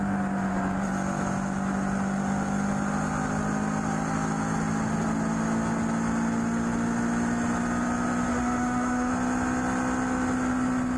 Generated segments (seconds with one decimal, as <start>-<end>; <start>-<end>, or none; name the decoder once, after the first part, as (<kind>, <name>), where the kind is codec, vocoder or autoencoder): 8.3-9.1 (autoencoder, DAC-VAE)